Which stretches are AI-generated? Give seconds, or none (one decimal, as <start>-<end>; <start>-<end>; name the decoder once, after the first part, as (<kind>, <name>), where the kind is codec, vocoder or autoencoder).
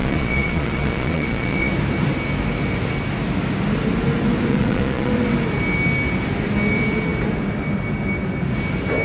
0.0-1.7 (vocoder, Vocos); 4.5-5.1